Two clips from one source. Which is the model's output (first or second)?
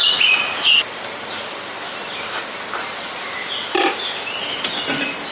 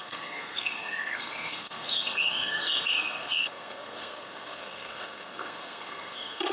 second